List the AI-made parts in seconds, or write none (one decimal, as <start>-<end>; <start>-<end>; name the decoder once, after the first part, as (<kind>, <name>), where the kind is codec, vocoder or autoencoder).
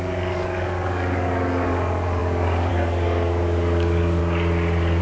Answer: 0.0-4.2 (codec, DAC)